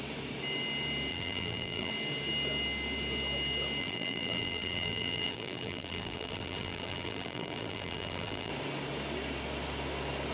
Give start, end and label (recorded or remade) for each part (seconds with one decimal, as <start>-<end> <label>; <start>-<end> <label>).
0.0-1.1 recorded; 1.1-1.9 remade; 1.9-3.8 recorded; 3.8-8.5 remade; 8.5-10.3 recorded